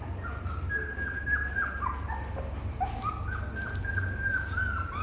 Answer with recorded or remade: recorded